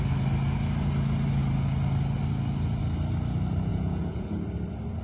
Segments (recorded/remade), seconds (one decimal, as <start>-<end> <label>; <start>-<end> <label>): 0.0-3.7 recorded; 3.7-4.3 remade; 4.3-5.0 recorded

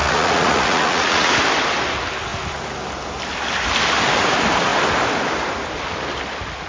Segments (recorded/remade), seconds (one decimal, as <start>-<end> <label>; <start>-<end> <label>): 0.0-1.3 remade; 1.3-6.7 recorded

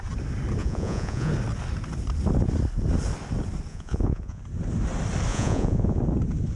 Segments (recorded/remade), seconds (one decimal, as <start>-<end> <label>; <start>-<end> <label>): 0.0-0.6 recorded; 0.6-1.3 remade; 1.3-3.7 recorded; 3.7-4.4 remade; 4.4-5.3 recorded; 5.3-6.0 remade; 6.0-6.6 recorded

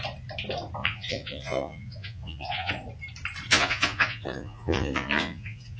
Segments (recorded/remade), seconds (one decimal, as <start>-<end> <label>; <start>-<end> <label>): 0.0-0.8 recorded; 0.8-2.7 remade; 2.7-3.5 recorded; 3.5-5.8 remade

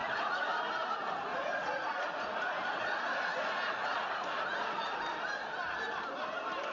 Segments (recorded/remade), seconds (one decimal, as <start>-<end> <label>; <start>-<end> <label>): 0.0-0.6 remade; 0.6-1.3 recorded; 1.3-5.0 remade; 5.0-6.7 recorded